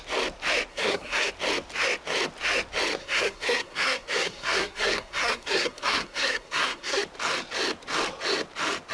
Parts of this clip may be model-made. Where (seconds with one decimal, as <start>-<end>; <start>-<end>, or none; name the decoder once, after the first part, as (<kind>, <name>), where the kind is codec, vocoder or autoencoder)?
0.7-1.3 (codec, SNAC); 3.0-7.0